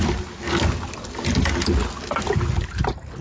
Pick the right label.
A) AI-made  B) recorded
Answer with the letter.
B